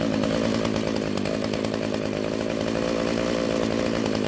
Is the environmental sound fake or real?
real